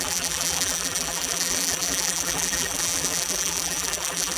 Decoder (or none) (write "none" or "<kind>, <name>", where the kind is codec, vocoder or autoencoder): vocoder, BigVGAN v2